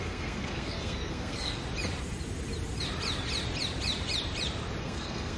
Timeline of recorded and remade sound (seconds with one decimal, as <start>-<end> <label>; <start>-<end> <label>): 0.0-1.6 remade; 1.6-4.8 recorded; 4.8-5.4 remade